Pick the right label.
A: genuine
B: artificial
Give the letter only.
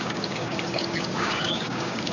B